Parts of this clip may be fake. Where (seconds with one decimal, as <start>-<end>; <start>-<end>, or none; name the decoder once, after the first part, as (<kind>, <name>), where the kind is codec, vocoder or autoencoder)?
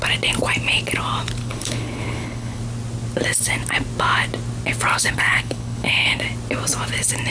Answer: 1.4-2.6 (codec, HILCodec); 4.9-6.2